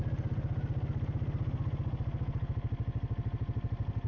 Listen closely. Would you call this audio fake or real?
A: real